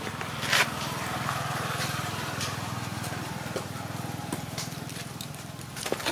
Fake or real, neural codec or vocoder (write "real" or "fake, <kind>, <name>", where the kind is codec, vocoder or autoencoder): real